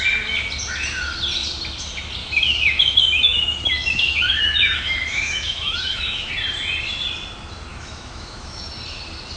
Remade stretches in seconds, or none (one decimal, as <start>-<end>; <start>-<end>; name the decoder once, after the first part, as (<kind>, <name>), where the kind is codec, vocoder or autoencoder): 2.2-6.3 (autoencoder, DAC-VAE); 7.7-8.6